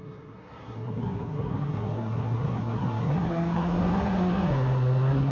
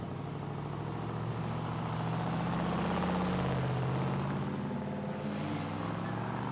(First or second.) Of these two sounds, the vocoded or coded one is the first